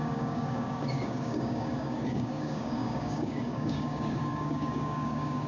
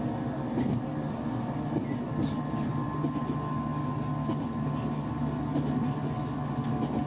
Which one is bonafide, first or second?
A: second